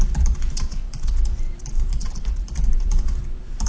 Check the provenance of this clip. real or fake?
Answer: fake